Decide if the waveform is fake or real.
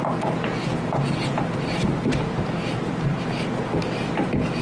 real